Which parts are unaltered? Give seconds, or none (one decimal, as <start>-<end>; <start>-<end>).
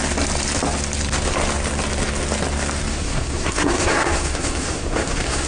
0.0-2.9